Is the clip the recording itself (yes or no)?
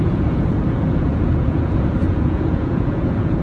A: no